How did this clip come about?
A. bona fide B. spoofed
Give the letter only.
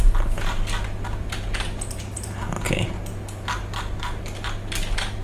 A